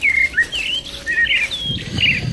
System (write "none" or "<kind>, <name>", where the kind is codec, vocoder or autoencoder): none